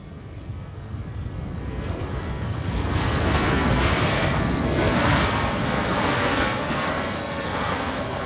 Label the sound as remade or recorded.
remade